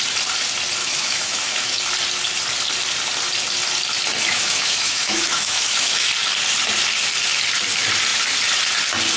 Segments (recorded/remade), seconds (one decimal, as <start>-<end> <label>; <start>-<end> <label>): 0.0-0.8 recorded; 0.8-1.8 remade; 1.8-4.2 recorded; 4.2-6.1 remade; 6.1-9.2 recorded